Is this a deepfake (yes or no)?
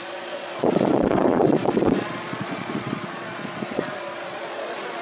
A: yes